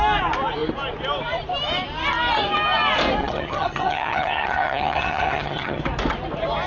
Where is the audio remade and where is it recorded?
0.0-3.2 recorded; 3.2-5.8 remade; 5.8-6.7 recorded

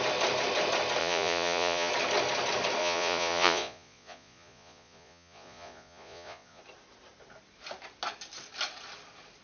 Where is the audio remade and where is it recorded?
0.0-1.0 recorded; 1.0-1.9 remade; 1.9-2.8 recorded; 2.8-6.6 remade; 6.6-9.4 recorded

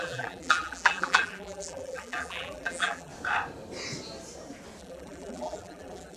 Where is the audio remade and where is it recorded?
0.0-3.1 remade; 3.1-4.8 recorded; 4.8-6.2 remade

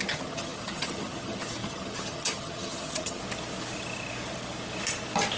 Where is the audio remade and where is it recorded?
0.0-3.2 remade; 3.2-5.4 recorded

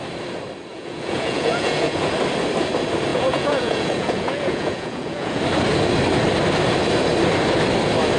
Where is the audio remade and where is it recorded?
0.0-0.7 recorded; 0.7-2.1 remade; 2.1-3.1 recorded; 3.1-5.4 remade; 5.4-8.2 recorded

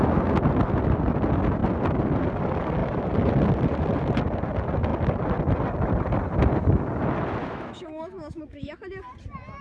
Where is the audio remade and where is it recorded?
0.0-7.4 recorded; 7.4-8.8 remade; 8.8-9.6 recorded